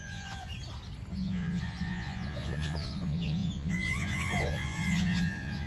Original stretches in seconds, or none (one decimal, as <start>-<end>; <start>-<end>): 0.5-1.1